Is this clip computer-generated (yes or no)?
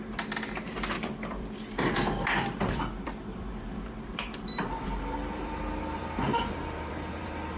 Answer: yes